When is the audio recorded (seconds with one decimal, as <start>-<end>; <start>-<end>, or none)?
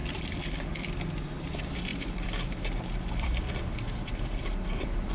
1.0-1.9